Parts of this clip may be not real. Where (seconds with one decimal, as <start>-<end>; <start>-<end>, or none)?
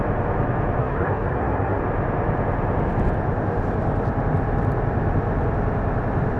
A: 0.8-1.8